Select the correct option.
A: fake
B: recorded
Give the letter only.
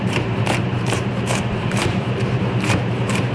A